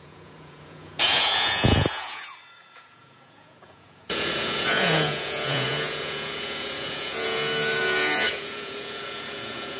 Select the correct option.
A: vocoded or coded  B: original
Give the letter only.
A